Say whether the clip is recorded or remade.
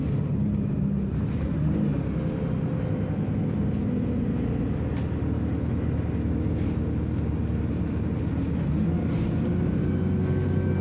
recorded